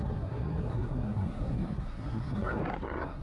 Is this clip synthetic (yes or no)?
yes